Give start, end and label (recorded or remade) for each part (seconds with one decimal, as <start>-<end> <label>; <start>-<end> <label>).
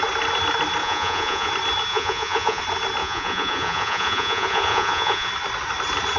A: 0.0-0.8 recorded; 0.8-1.5 remade; 1.5-1.9 recorded; 1.9-2.6 remade; 2.6-3.0 recorded; 3.0-5.3 remade; 5.3-6.2 recorded